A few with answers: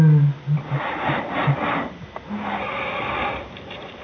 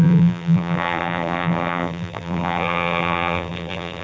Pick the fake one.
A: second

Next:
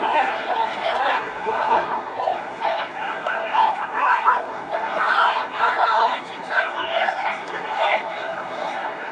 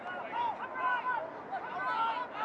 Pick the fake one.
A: first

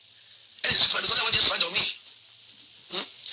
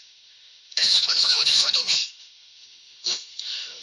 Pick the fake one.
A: second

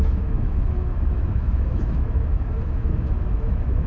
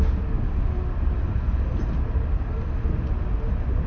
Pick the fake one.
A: first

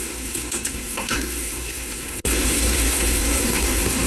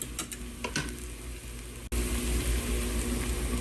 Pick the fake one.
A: first